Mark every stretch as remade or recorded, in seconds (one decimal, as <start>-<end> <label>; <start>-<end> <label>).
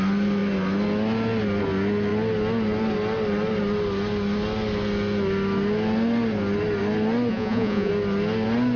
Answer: 0.0-7.3 recorded; 7.3-7.9 remade; 7.9-8.8 recorded